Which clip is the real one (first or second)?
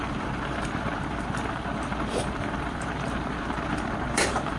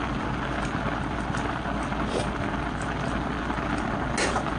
second